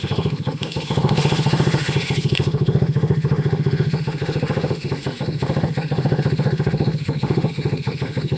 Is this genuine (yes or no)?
no